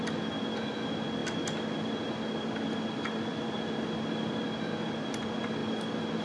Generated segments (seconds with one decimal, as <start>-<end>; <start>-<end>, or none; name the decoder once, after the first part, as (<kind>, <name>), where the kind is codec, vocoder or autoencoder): none